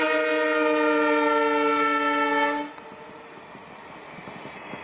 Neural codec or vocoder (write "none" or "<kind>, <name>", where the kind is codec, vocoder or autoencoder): none